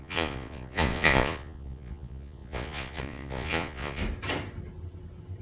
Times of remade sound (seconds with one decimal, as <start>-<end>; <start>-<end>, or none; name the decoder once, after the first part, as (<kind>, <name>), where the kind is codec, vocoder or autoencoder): 0.0-4.0 (vocoder, Vocos)